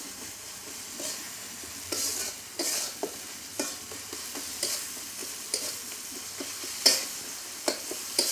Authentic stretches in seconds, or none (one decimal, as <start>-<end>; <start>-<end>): 0.0-8.3